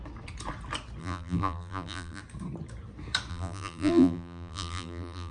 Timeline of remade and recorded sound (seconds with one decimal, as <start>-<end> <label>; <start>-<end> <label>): 0.0-1.0 recorded; 1.0-2.2 remade; 2.2-3.3 recorded; 3.3-5.3 remade